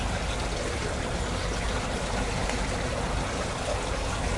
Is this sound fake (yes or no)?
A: no